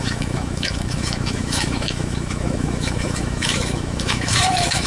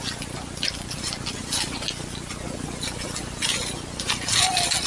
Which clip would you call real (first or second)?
second